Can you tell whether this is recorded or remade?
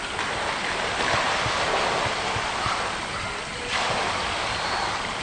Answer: recorded